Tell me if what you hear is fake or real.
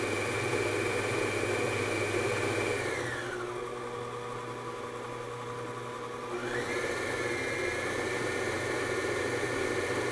real